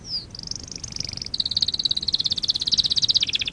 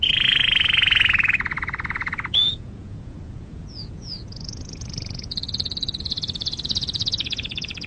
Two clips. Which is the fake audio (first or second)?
second